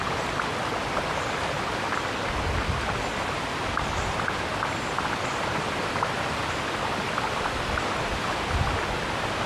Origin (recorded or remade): recorded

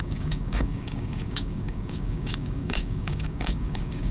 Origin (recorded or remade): remade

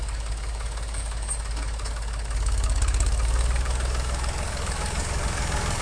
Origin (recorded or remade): remade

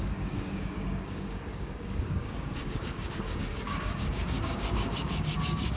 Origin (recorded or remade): remade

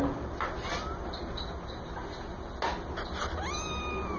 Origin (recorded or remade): recorded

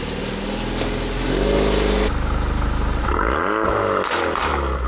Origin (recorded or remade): recorded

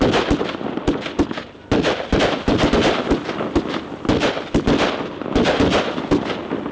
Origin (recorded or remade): recorded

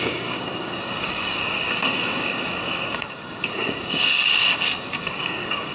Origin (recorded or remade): remade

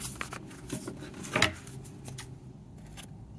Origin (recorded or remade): recorded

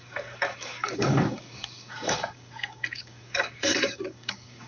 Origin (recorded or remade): remade